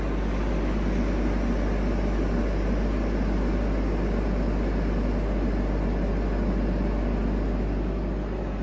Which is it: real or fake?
real